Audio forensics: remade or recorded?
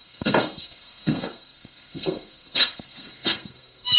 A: remade